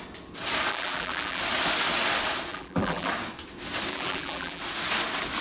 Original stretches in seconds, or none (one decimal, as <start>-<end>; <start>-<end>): 0.0-0.7; 1.4-2.5; 3.1-3.9; 4.6-5.4